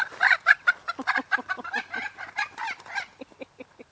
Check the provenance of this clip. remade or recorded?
recorded